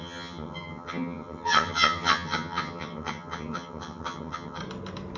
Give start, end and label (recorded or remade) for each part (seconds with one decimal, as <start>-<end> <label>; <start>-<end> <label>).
0.0-4.6 remade; 4.6-5.2 recorded